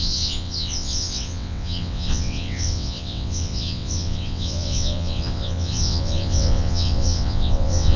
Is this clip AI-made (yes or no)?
yes